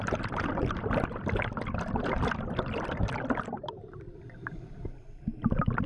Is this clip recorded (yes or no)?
no